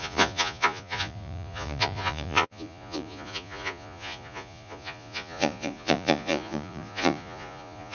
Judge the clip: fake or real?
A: fake